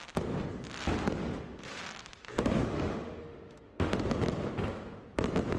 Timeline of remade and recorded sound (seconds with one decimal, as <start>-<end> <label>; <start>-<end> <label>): 0.0-1.2 recorded; 1.2-1.8 remade; 1.8-2.2 recorded; 2.2-4.0 remade; 4.0-5.6 recorded